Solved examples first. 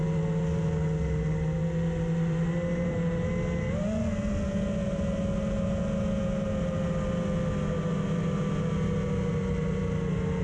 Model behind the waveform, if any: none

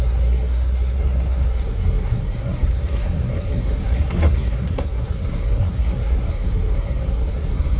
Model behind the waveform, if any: codec, SNAC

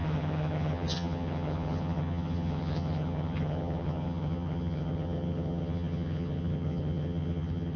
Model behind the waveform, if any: vocoder, HiFi-GAN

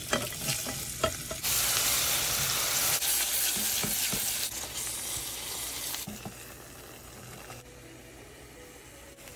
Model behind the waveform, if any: none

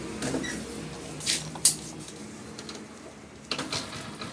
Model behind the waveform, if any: none